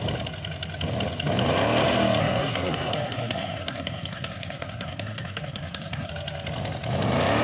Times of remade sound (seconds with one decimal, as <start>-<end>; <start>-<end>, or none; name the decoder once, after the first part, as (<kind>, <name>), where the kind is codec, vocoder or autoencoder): 2.2-6.1 (codec, SNAC)